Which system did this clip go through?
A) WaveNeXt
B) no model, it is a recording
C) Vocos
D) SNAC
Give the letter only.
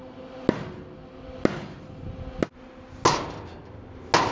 B